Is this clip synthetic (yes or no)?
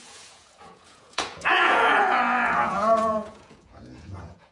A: yes